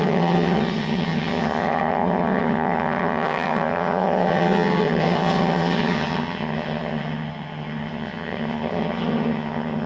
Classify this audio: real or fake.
fake